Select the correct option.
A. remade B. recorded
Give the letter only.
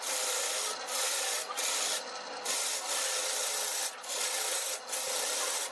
B